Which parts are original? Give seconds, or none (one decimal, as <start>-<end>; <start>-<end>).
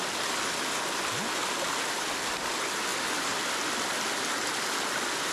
0.0-5.3